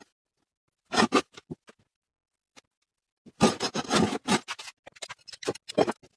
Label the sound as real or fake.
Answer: real